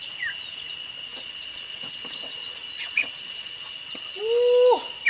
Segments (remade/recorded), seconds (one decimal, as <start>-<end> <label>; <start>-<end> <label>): 0.0-1.1 recorded; 1.1-4.2 remade; 4.2-5.1 recorded